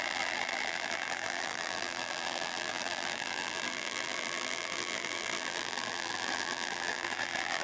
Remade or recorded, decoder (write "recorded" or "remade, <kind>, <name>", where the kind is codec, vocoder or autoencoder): remade, vocoder, BigVGAN v2